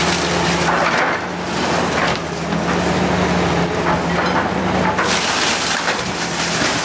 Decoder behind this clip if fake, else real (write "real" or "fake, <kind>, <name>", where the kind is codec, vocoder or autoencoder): real